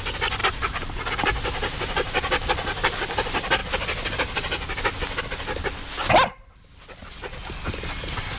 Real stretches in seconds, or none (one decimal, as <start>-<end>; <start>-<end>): 0.0-0.4; 1.1-8.4